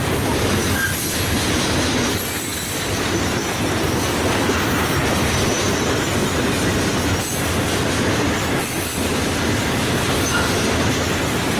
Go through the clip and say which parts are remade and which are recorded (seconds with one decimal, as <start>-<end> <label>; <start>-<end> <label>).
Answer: 0.0-11.6 recorded